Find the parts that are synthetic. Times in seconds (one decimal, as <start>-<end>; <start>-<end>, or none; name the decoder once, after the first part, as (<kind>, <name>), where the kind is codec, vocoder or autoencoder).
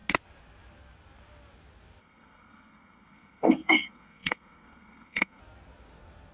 2.0-5.4 (codec, SNAC)